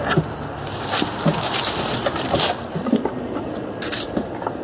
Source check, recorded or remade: recorded